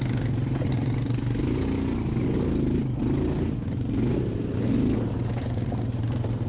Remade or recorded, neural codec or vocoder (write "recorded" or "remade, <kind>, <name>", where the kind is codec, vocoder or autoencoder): recorded